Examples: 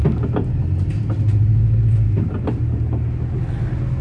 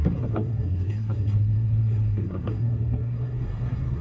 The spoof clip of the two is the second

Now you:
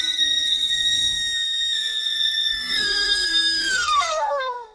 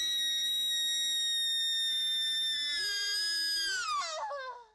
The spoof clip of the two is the first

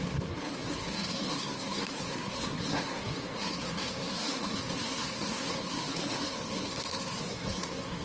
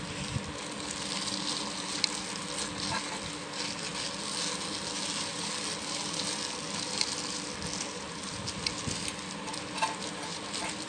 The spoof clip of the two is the first